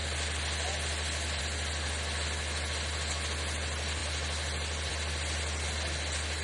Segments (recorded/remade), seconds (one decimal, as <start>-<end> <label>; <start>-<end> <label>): 0.0-6.4 recorded